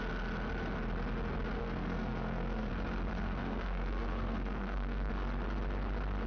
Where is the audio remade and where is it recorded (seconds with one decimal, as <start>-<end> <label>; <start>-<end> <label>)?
0.0-1.6 recorded; 1.6-2.7 remade; 2.7-3.1 recorded; 3.1-5.1 remade; 5.1-6.3 recorded